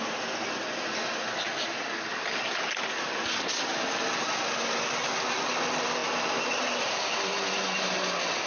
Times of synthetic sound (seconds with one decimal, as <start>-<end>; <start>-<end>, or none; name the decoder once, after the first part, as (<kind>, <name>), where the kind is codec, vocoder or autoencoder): none